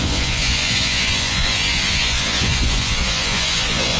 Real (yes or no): no